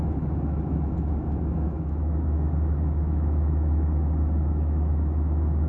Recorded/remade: remade